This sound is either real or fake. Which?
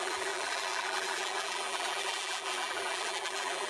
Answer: fake